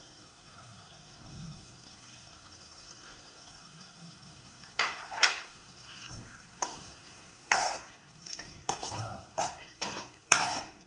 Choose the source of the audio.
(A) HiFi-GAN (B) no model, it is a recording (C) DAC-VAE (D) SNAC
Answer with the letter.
D